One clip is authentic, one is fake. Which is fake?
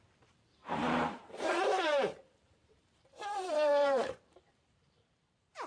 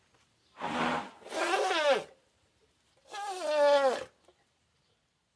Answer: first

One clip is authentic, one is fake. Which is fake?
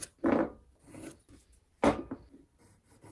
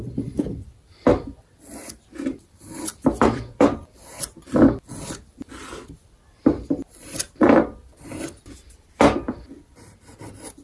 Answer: second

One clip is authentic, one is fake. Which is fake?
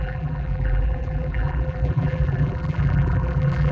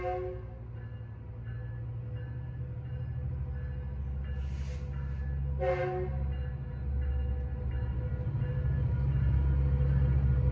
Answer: first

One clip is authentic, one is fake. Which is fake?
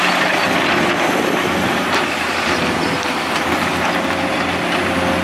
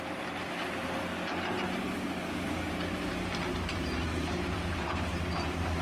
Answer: second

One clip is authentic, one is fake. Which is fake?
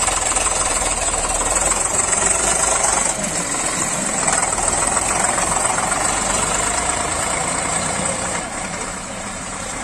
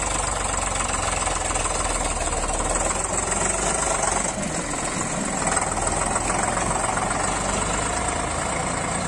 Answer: first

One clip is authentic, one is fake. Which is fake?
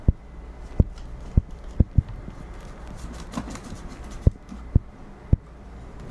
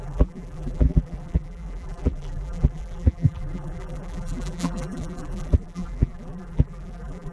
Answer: second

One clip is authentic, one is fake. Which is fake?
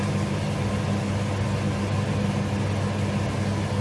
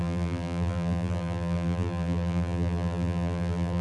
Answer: second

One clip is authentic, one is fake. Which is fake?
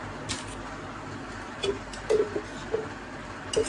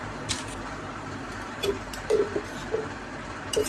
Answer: second